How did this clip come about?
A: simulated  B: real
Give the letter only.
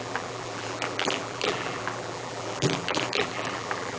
A